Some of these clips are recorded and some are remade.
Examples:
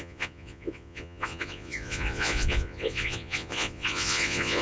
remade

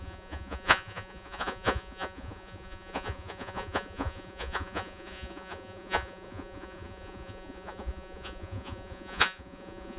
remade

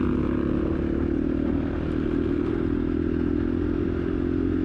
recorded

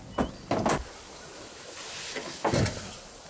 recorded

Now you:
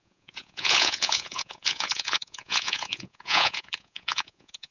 remade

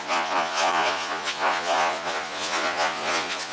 remade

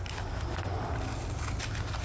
recorded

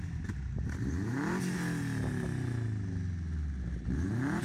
recorded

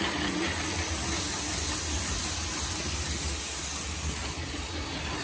recorded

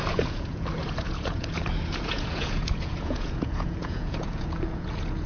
remade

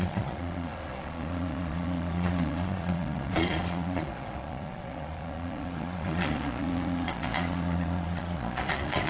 remade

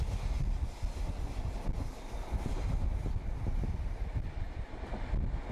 recorded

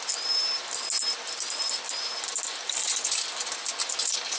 recorded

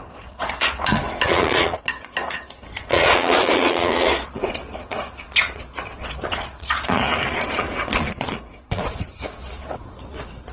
remade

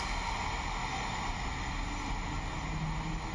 recorded